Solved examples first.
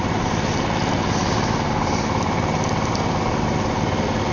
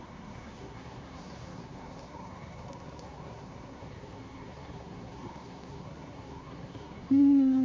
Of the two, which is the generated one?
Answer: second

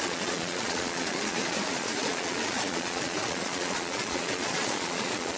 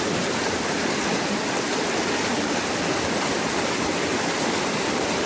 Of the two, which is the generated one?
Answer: first